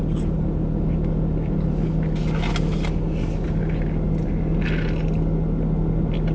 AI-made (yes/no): no